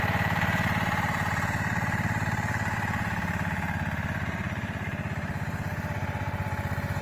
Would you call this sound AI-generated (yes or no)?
yes